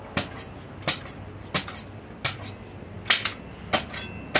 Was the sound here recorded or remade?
recorded